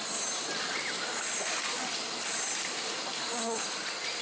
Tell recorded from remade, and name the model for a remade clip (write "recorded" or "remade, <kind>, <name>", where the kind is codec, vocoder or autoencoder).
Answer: recorded